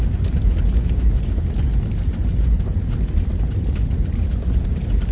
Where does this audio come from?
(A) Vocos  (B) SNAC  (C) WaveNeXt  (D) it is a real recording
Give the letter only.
D